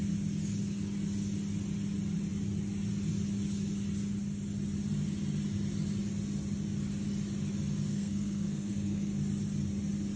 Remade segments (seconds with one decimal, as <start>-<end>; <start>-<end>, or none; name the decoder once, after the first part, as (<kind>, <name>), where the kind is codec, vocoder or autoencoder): 7.9-9.1 (codec, SNAC)